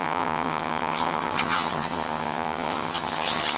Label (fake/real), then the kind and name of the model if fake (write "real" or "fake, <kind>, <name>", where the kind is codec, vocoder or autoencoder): fake, vocoder, HiFi-GAN